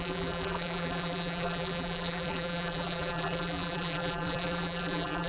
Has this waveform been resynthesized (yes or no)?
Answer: yes